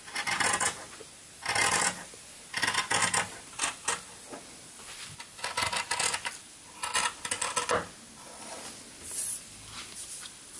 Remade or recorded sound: recorded